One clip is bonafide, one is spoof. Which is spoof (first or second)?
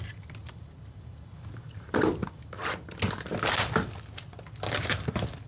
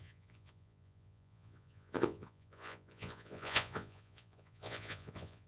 second